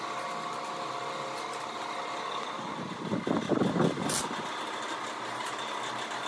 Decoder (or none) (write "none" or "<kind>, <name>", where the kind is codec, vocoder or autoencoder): none